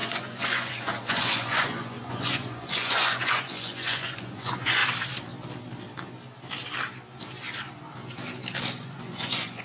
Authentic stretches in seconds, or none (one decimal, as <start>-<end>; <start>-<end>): 4.8-8.8